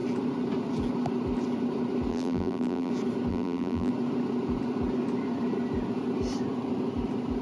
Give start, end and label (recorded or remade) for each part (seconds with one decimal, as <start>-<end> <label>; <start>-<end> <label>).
0.0-2.1 recorded; 2.1-2.9 remade; 2.9-3.3 recorded; 3.3-3.9 remade; 3.9-7.4 recorded